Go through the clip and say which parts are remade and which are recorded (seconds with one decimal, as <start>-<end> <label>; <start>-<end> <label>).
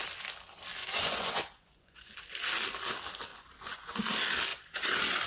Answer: 0.0-0.8 recorded; 0.8-2.1 remade; 2.1-3.3 recorded; 3.3-4.0 remade; 4.0-4.5 recorded; 4.5-5.3 remade